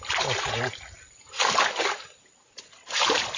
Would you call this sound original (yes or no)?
yes